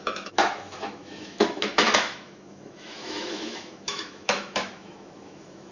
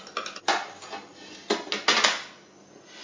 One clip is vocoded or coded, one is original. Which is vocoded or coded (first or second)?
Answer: first